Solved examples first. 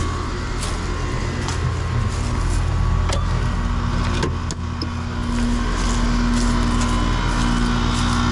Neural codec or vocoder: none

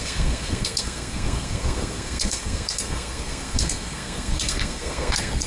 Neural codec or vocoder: codec, SNAC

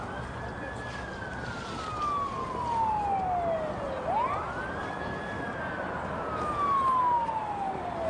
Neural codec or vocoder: none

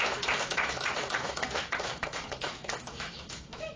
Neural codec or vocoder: autoencoder, DAC-VAE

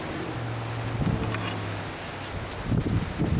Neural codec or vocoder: none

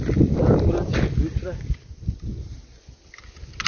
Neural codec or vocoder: none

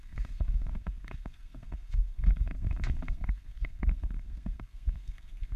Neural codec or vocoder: codec, SNAC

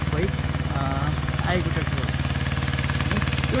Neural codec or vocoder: none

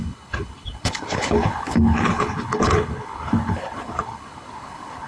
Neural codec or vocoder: codec, HILCodec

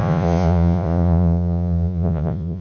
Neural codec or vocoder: vocoder, Vocos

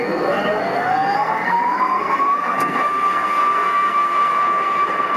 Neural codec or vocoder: codec, SNAC